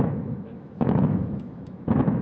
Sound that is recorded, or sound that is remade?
remade